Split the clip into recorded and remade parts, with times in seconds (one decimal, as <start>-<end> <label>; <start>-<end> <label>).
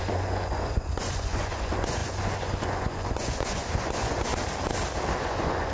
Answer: 0.0-4.3 remade; 4.3-5.2 recorded; 5.2-5.7 remade